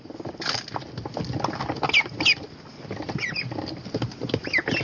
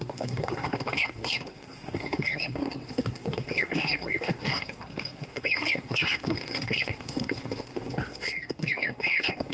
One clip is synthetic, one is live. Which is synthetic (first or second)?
second